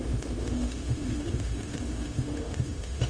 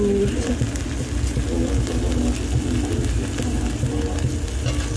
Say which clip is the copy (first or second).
first